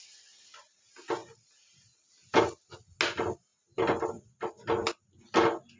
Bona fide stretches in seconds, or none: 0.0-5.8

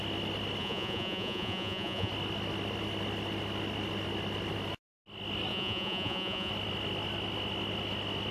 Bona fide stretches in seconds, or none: 0.0-0.6; 2.1-5.5; 6.5-8.3

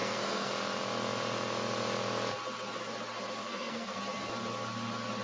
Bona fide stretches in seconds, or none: 0.5-3.4; 4.0-5.2

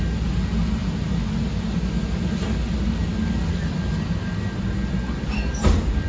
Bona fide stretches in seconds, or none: 0.0-6.1

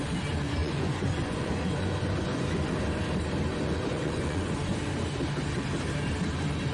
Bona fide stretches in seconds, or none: 0.0-0.6; 2.6-3.5; 4.8-6.7

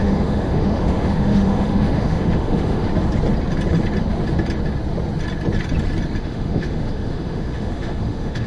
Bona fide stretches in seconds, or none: 2.9-6.2